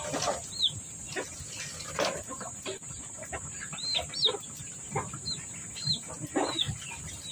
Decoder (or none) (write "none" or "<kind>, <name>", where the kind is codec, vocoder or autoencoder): none